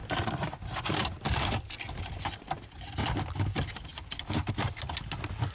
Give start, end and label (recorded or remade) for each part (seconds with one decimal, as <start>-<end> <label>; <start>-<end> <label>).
0.0-5.5 recorded